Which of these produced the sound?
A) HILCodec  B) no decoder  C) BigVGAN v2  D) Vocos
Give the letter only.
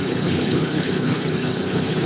A